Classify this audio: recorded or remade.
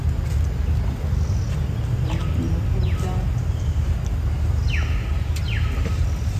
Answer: recorded